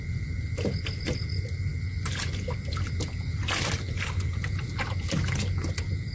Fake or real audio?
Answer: real